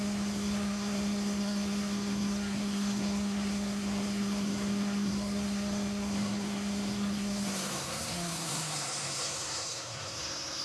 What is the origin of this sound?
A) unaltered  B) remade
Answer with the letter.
B